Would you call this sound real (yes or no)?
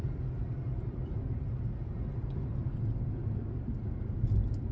yes